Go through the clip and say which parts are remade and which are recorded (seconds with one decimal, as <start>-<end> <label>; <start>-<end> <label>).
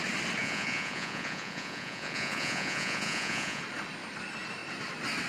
0.0-0.4 recorded; 0.4-3.6 remade; 3.6-5.3 recorded